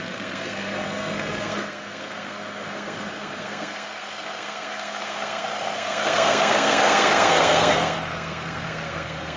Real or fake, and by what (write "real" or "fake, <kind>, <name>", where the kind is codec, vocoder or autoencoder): fake, codec, SNAC